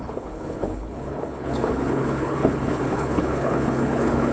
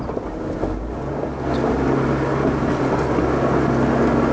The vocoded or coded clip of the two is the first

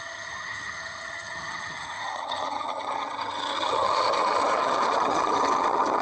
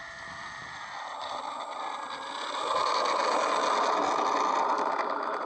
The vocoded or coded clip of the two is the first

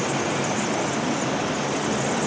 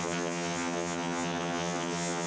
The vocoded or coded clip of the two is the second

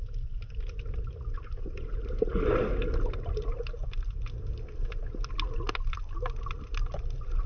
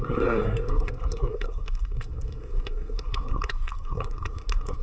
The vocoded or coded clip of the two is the second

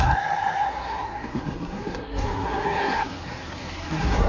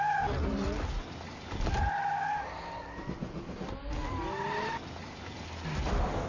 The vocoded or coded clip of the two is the first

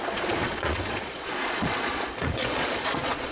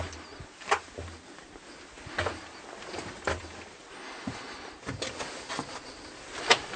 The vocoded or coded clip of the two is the first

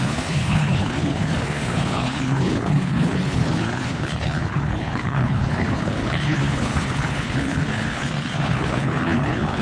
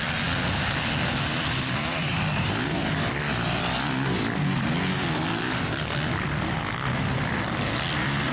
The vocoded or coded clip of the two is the first